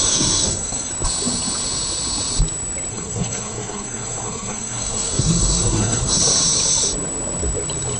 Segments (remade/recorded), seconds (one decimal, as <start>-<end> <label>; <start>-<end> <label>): 0.0-0.9 remade; 0.9-2.9 recorded; 2.9-6.2 remade; 6.2-8.0 recorded